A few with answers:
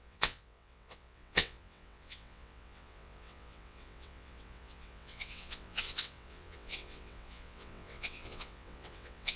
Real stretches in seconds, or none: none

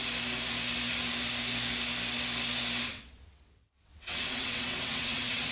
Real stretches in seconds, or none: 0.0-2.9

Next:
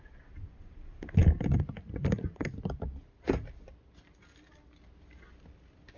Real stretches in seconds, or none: 0.0-6.0

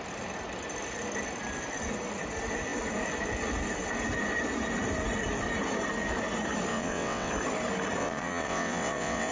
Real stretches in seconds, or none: 0.0-6.7; 7.3-8.0